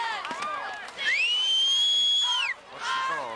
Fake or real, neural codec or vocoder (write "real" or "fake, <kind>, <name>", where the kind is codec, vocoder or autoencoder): real